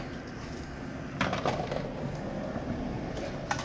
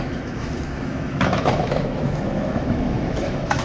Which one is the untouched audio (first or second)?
first